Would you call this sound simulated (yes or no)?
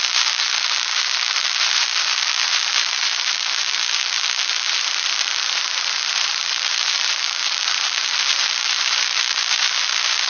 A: yes